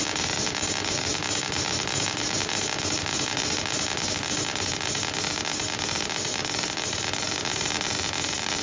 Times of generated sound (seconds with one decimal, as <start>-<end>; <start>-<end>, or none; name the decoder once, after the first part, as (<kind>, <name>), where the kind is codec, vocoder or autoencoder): none